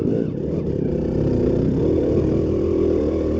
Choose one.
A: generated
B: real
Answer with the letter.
B